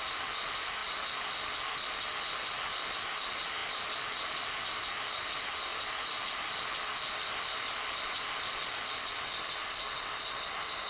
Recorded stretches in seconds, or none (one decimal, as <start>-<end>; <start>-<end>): 0.0-0.8; 2.2-3.6; 4.1-5.7; 9.1-10.9